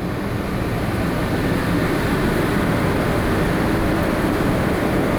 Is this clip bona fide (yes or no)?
yes